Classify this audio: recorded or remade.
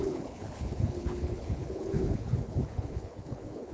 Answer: remade